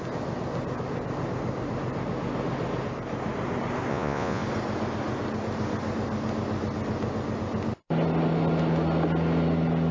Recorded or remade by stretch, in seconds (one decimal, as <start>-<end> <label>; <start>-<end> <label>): 0.0-3.9 recorded; 3.9-4.4 remade; 4.4-9.9 recorded